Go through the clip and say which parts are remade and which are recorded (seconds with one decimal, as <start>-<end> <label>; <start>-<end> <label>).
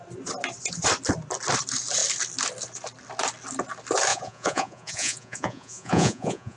0.0-4.1 recorded; 4.1-6.6 remade